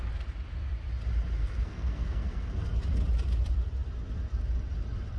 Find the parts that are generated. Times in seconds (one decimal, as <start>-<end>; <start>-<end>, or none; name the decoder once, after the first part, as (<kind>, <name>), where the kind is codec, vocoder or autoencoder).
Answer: 1.4-2.5 (codec, SNAC)